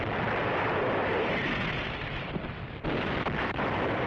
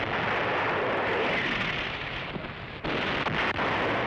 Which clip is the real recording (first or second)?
second